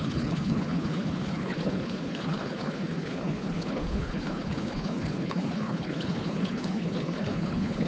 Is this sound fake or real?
fake